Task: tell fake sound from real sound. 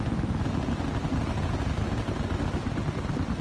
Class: real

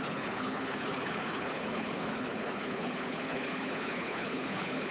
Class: fake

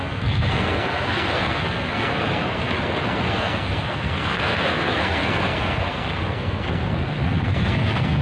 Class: fake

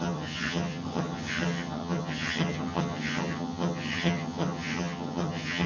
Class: fake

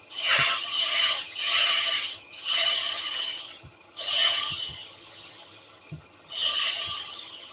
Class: fake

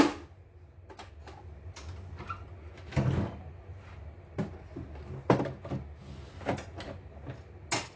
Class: real